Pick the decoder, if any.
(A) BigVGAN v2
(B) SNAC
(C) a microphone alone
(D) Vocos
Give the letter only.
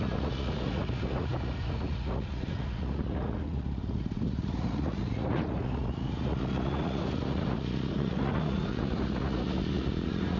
D